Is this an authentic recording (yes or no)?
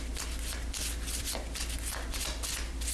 yes